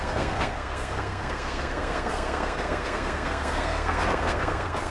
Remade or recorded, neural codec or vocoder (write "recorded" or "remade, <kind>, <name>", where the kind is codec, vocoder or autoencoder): remade, codec, SNAC